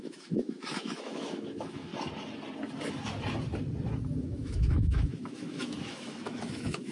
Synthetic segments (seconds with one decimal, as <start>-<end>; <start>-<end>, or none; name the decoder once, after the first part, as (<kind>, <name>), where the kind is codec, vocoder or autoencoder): 0.0-1.9 (autoencoder, DAC-VAE); 4.2-6.9